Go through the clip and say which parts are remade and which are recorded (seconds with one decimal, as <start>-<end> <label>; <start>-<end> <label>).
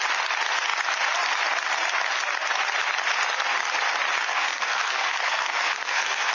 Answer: 0.0-4.3 recorded; 4.3-6.3 remade